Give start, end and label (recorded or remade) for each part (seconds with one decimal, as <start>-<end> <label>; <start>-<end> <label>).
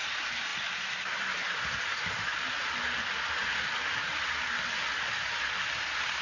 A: 0.0-6.2 recorded